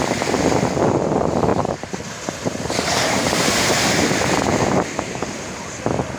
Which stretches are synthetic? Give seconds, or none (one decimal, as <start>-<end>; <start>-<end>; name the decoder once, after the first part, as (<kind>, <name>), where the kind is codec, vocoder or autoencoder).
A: 1.5-5.2 (vocoder, BigVGAN v2)